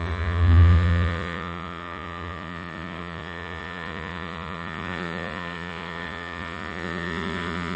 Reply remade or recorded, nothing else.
remade